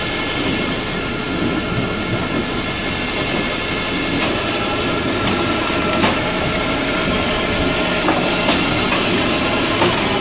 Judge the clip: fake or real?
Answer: real